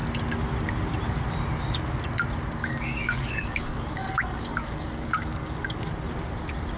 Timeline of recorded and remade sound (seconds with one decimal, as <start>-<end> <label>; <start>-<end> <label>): 0.0-2.6 recorded; 2.6-5.9 remade; 5.9-6.8 recorded